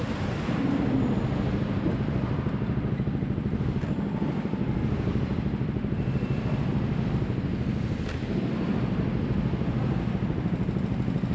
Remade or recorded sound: recorded